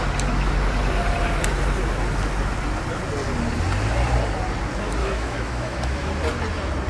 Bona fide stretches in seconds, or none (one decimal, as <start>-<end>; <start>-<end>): 0.0-5.0; 6.1-6.9